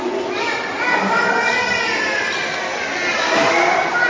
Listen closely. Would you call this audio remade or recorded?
recorded